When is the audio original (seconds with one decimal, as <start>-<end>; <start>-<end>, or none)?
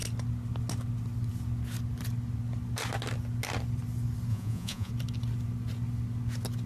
0.0-4.3; 4.9-6.7